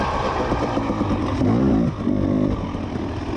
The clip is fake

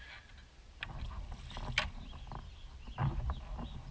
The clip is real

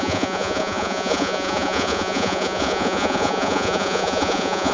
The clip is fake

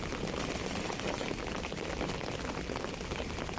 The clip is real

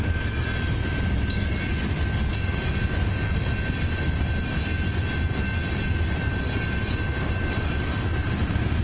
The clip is real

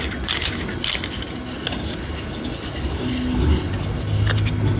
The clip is real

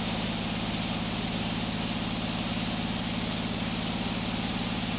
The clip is real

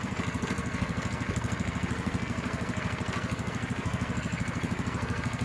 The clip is fake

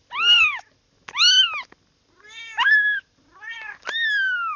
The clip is real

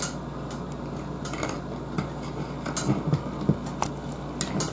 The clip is real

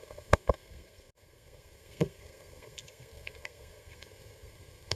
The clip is fake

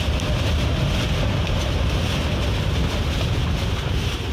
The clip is real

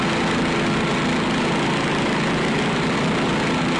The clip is real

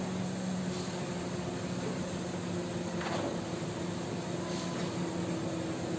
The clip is real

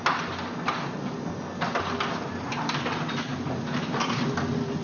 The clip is real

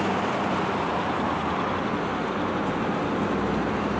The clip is real